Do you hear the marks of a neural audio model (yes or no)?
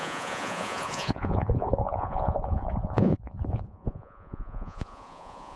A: yes